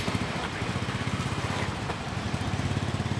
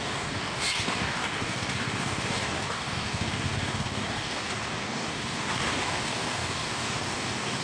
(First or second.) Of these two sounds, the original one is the first